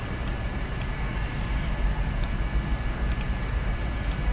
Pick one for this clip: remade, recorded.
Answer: remade